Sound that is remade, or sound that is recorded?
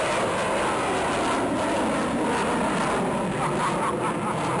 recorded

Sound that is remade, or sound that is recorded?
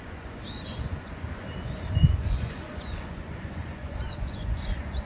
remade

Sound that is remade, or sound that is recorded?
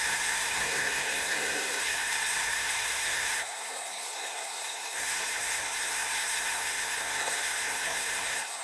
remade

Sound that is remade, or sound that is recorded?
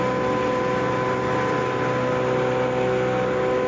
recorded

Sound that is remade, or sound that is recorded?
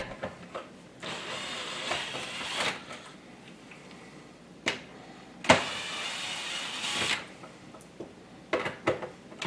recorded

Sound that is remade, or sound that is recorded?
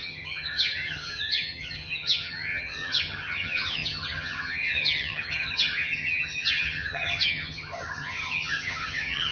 remade